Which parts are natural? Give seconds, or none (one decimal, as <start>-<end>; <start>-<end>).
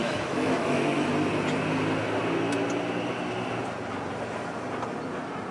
1.1-5.5